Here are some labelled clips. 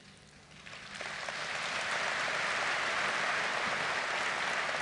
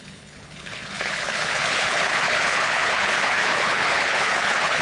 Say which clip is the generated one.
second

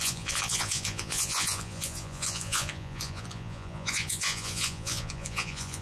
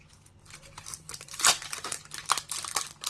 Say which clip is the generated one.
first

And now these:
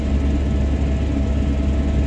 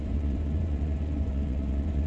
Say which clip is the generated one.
second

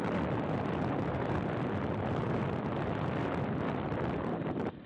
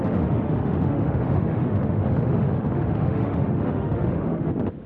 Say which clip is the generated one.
second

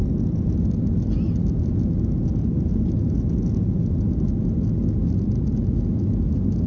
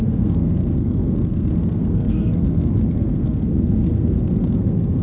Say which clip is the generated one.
second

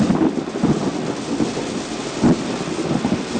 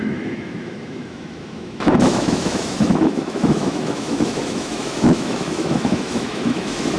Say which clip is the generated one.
second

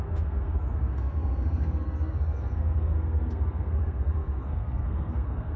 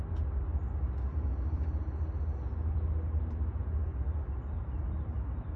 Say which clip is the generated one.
first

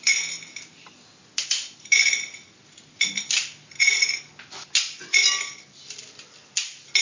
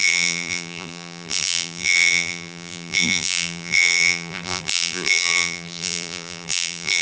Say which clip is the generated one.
second